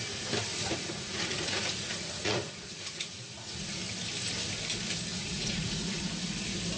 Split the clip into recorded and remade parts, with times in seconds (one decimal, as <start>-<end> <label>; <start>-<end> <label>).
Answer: 0.0-0.5 recorded; 0.5-3.8 remade; 3.8-5.1 recorded; 5.1-6.1 remade; 6.1-6.8 recorded